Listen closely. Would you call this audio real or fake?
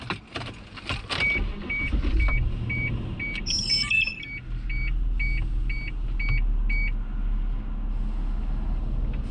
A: real